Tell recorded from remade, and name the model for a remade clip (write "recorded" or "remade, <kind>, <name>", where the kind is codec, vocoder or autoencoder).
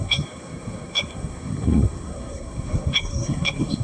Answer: remade, codec, SNAC